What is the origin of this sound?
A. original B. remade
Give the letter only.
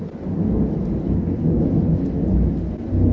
A